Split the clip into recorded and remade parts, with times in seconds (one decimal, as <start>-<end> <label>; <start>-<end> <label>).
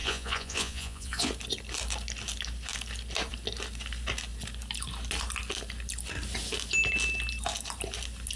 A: 0.0-1.3 remade; 1.3-8.4 recorded